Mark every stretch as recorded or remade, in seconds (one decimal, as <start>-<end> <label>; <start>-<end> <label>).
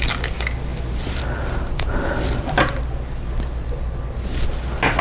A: 0.0-5.0 recorded